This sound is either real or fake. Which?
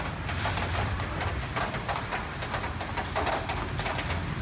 real